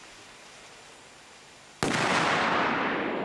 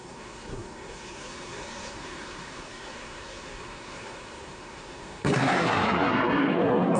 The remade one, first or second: second